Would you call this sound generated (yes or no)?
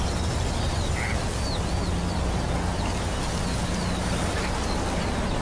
no